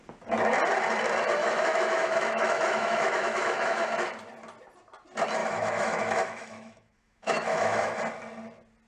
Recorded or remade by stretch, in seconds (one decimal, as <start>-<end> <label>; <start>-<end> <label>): 0.0-1.4 recorded; 1.4-3.9 remade; 3.9-5.4 recorded; 5.4-8.0 remade; 8.0-8.9 recorded